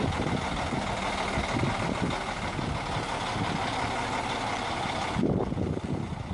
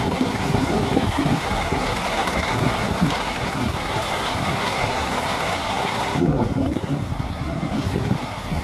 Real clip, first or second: first